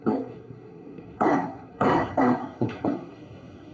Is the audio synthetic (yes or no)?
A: yes